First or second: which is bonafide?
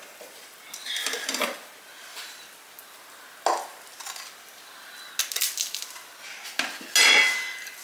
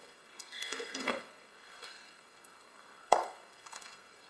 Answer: first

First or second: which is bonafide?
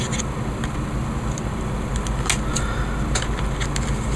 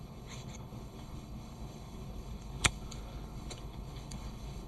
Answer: first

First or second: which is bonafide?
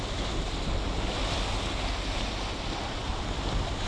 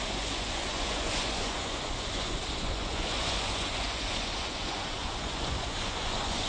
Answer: first